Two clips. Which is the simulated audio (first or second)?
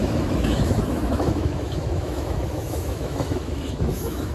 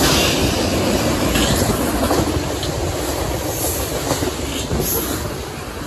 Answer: first